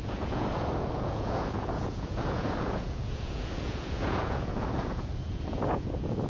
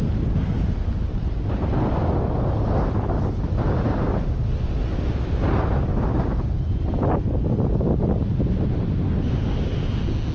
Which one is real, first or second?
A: second